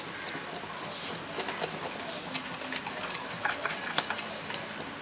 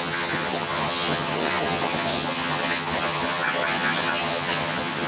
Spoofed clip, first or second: second